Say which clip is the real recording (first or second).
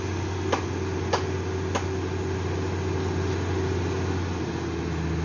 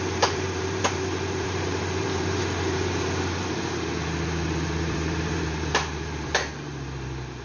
first